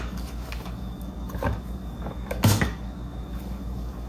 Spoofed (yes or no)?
yes